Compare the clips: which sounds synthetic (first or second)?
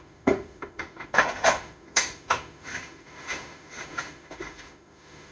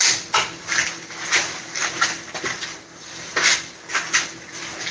first